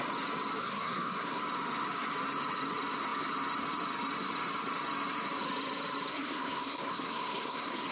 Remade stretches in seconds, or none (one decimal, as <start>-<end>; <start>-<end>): 0.6-1.4; 6.1-7.9